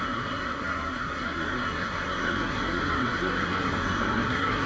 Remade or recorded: remade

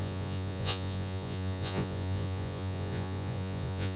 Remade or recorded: remade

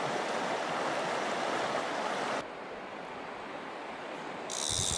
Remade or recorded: recorded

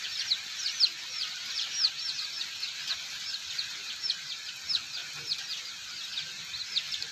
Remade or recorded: recorded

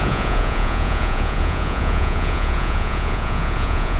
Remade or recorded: remade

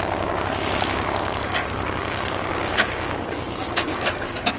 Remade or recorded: remade